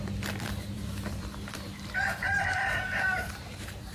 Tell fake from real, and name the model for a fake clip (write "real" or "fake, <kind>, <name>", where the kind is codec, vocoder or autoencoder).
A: fake, vocoder, BigVGAN v2